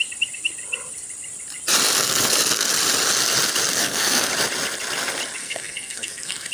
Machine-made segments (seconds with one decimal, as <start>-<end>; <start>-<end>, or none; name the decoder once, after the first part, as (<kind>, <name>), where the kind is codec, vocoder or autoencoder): 2.0-2.7 (codec, SNAC); 3.8-4.3; 5.4-6.5

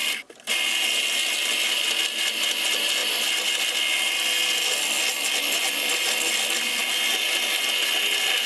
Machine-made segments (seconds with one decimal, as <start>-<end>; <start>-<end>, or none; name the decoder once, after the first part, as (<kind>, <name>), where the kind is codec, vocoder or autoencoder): none

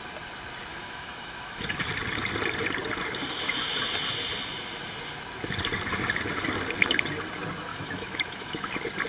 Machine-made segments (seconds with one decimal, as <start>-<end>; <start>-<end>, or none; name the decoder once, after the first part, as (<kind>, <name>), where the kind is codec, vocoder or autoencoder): 0.7-1.9 (autoencoder, DAC-VAE); 7.7-8.7

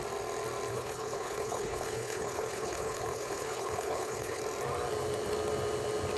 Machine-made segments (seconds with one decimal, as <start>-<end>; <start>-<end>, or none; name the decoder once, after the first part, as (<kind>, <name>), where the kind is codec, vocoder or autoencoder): 0.7-4.4 (codec, HILCodec)

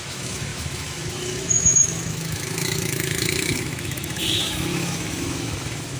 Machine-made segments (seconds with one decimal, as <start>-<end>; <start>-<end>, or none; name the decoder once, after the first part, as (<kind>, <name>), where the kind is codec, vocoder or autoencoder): 0.0-6.0 (autoencoder, DAC-VAE)

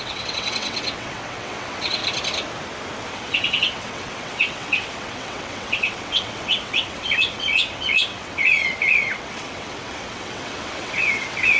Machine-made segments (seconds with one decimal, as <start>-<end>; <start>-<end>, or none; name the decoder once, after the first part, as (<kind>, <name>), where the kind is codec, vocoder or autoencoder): 0.0-2.0 (vocoder, WaveNeXt); 3.1-11.6